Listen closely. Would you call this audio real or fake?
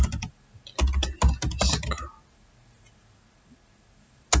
real